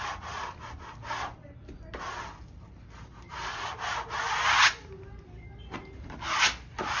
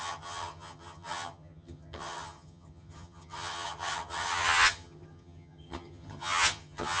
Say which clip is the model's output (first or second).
second